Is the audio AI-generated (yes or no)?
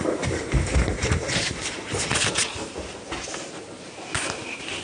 no